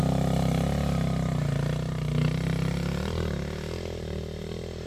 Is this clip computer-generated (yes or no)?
no